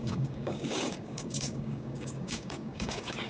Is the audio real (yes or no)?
no